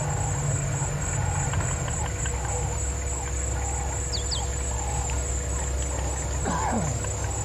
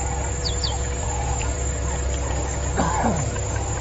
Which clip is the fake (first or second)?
second